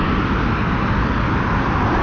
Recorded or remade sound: recorded